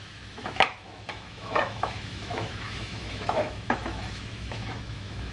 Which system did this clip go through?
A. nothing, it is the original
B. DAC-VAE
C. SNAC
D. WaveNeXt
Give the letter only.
B